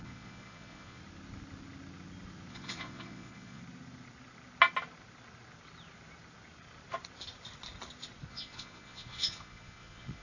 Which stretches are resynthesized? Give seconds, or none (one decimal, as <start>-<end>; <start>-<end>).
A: 0.0-1.0; 2.5-3.6; 8.3-10.2